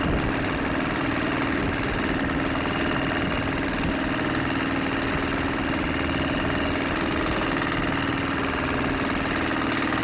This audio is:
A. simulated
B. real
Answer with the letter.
B